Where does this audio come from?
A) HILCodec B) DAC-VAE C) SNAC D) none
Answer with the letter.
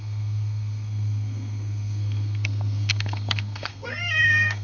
C